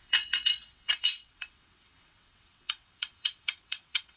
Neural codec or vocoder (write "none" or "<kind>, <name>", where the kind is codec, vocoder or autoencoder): vocoder, WaveNeXt